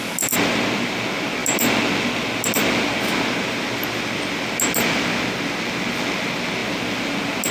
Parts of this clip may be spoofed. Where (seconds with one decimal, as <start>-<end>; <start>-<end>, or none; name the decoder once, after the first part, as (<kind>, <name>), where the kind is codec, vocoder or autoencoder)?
none